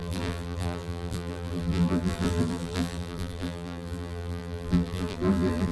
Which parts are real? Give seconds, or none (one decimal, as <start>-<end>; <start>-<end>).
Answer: none